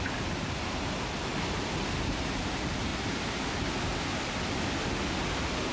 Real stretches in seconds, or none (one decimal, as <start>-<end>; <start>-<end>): 0.0-5.7